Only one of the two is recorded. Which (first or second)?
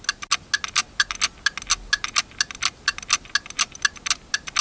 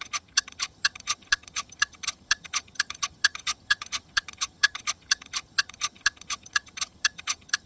first